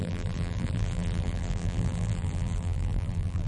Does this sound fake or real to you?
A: fake